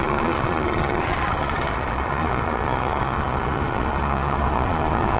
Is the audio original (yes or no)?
no